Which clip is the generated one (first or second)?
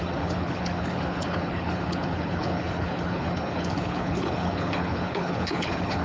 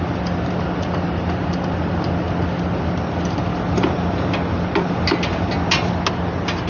first